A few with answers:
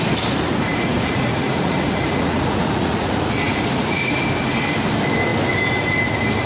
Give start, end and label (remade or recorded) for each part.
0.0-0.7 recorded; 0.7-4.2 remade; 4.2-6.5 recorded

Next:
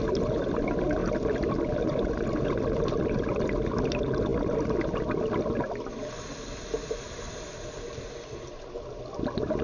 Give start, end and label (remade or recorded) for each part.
0.0-9.6 recorded

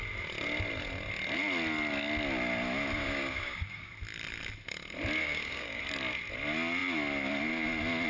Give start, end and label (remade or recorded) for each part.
0.0-3.0 recorded; 3.0-3.9 remade; 3.9-5.2 recorded; 5.2-5.8 remade; 5.8-8.1 recorded

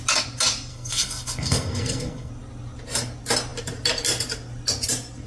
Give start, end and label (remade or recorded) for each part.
0.0-0.7 recorded; 0.7-2.3 remade; 2.3-5.3 recorded